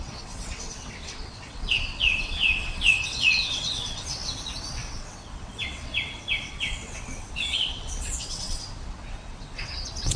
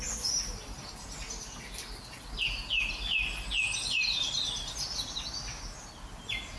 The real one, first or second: second